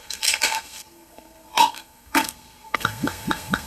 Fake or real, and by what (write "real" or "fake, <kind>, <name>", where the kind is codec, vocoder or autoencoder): fake, codec, SNAC